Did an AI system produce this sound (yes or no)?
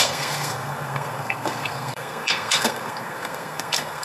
yes